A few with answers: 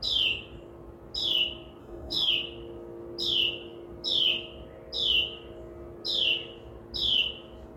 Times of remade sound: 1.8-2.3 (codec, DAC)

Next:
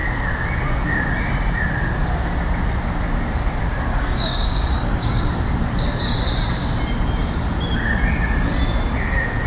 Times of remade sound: 3.9-5.2 (codec, DAC)

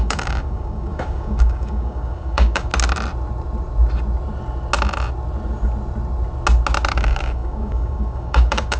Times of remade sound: 0.0-2.7 (codec, DAC); 6.9-8.8

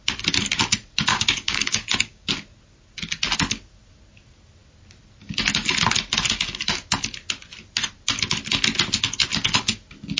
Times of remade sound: 1.1-2.3 (codec, DAC)